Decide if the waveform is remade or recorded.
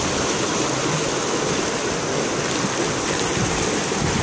recorded